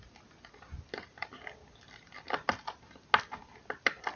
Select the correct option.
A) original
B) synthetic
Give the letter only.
A